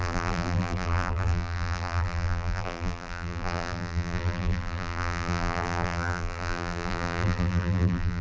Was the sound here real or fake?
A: fake